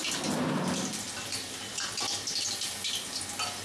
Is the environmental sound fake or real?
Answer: real